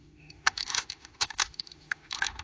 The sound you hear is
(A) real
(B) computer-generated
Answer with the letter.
B